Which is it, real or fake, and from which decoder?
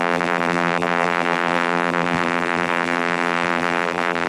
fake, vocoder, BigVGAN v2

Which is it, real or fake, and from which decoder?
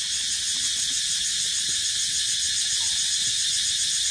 real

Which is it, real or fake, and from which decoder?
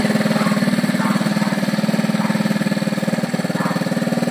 real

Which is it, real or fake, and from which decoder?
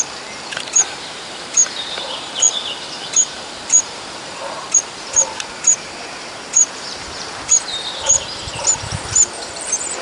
fake, vocoder, BigVGAN v2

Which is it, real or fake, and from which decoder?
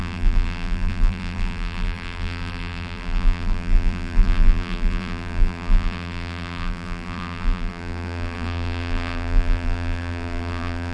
fake, vocoder, BigVGAN v2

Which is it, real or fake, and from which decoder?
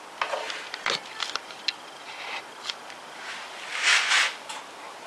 real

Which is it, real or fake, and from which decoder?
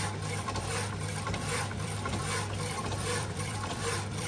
fake, vocoder, BigVGAN v2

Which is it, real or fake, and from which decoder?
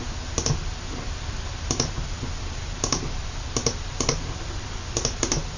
fake, vocoder, BigVGAN v2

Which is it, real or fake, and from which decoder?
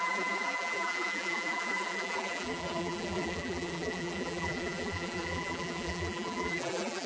fake, vocoder, BigVGAN v2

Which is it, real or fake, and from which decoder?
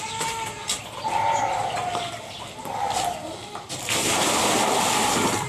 fake, vocoder, BigVGAN v2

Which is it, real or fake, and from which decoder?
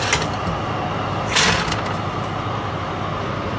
real